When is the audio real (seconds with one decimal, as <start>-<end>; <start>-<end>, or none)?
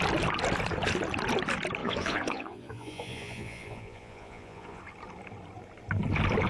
0.0-1.8; 4.8-6.5